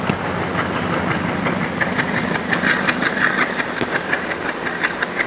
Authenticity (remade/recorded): recorded